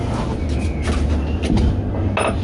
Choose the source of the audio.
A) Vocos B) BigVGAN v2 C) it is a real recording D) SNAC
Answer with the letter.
C